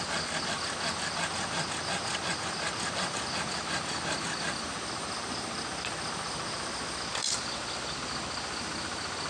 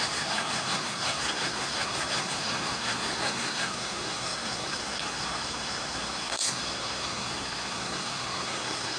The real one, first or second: first